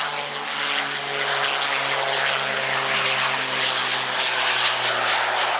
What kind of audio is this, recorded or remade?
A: recorded